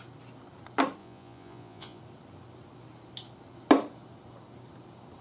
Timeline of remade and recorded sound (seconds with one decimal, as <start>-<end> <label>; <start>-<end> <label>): 0.0-1.0 recorded; 1.0-2.0 remade; 2.0-5.2 recorded